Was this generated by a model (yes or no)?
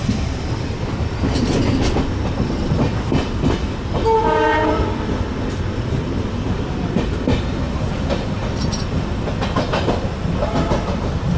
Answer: no